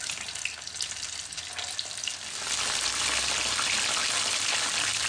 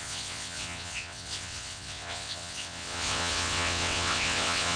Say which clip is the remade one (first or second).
second